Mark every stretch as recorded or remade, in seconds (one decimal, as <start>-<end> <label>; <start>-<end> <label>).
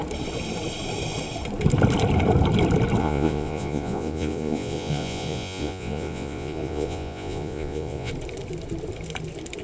0.0-3.0 recorded; 3.0-8.1 remade; 8.1-9.6 recorded